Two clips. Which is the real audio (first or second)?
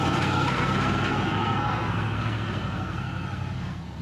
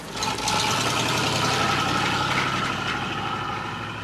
second